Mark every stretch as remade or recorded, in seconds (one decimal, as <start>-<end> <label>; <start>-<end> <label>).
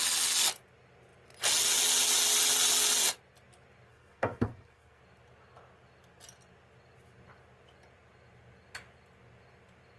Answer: 0.0-3.9 recorded; 3.9-5.0 remade; 5.0-10.0 recorded